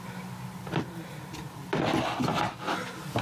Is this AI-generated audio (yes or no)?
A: no